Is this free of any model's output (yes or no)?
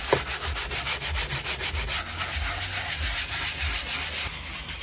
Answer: yes